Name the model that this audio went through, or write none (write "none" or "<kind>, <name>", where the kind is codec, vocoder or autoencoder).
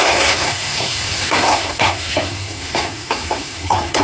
codec, SNAC